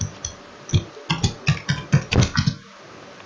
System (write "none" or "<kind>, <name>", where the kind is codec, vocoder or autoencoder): none